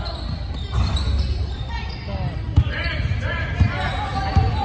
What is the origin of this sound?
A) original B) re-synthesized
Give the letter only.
A